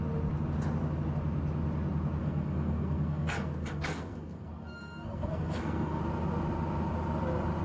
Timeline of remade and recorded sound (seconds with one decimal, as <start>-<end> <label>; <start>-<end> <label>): 0.0-2.2 recorded; 2.2-6.0 remade; 6.0-7.6 recorded